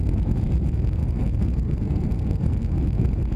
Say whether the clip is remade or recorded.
remade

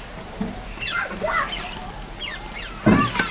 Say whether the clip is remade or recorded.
recorded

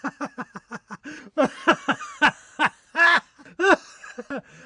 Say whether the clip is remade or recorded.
remade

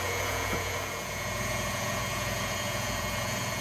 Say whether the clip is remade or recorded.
remade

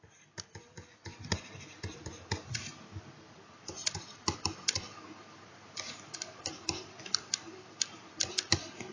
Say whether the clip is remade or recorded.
remade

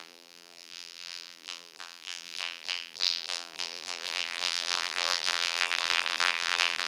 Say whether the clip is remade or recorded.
remade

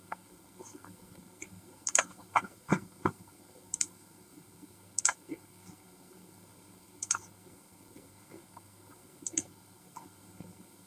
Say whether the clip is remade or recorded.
remade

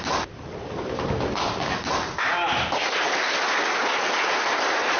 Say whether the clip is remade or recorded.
recorded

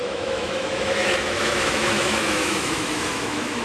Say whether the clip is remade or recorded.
remade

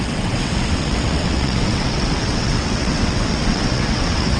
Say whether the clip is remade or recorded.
remade